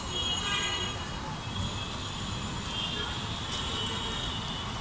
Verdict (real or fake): real